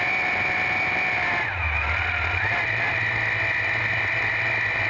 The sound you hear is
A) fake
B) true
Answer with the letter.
B